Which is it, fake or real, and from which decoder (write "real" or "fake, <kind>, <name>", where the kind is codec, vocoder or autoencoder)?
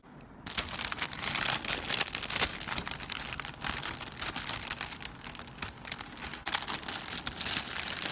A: real